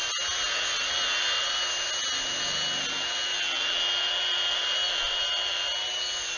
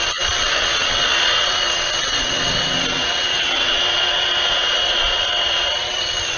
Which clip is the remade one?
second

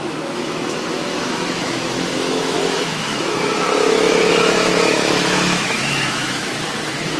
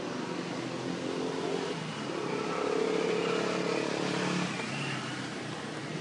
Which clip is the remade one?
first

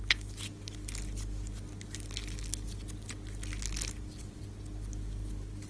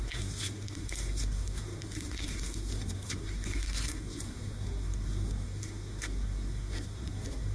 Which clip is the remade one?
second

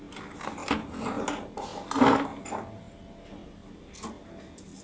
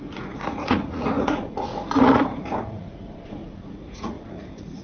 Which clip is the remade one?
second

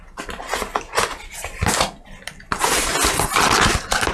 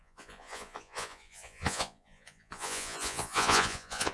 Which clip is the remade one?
second